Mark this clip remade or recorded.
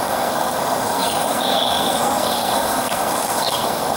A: remade